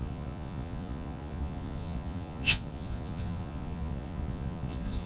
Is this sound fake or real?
fake